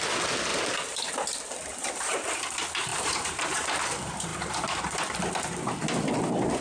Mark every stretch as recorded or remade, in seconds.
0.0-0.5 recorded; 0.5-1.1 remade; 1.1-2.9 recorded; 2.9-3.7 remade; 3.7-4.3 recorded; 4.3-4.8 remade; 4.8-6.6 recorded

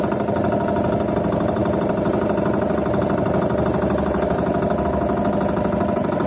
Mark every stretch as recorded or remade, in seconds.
0.0-6.3 recorded

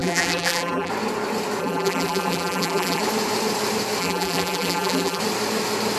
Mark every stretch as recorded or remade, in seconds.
0.0-0.9 remade; 0.9-1.6 recorded; 1.6-3.0 remade; 3.0-4.0 recorded; 4.0-5.2 remade; 5.2-6.0 recorded

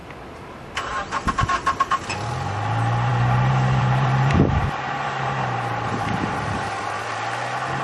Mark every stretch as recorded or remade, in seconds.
0.0-3.1 recorded; 3.1-7.1 remade; 7.1-7.8 recorded

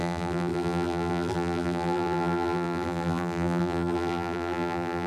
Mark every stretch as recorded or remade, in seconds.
0.0-5.1 remade

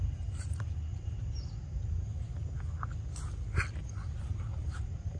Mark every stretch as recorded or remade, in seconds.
0.0-2.1 remade; 2.1-3.9 recorded; 3.9-5.2 remade

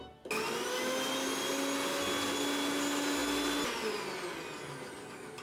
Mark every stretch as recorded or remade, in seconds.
0.0-5.4 recorded